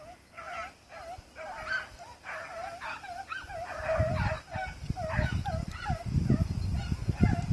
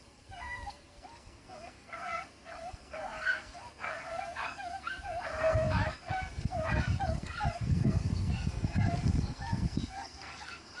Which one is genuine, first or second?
first